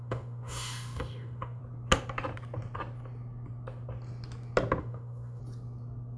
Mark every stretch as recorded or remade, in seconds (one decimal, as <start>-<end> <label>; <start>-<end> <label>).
0.0-1.6 remade; 1.6-4.8 recorded; 4.8-5.4 remade; 5.4-6.2 recorded